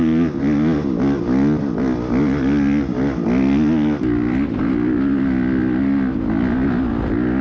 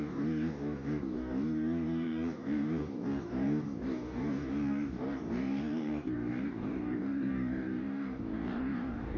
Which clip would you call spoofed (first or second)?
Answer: second